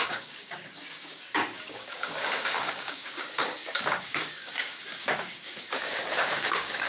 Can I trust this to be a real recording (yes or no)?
no